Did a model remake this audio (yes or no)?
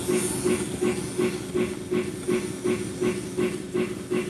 no